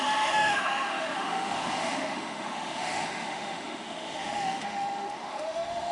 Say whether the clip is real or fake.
fake